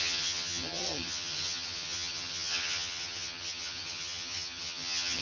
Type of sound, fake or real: fake